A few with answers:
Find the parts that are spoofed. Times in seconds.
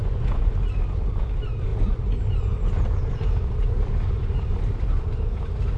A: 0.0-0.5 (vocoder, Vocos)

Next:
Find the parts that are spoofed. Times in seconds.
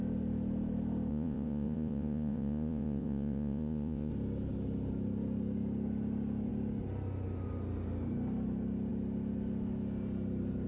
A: 1.1-4.1 (vocoder, Vocos)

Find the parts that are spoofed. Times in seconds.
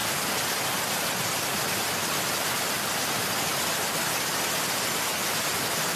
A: none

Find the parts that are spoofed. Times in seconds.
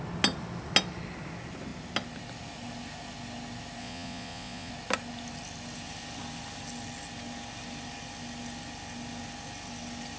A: 3.8-4.7 (vocoder, Vocos)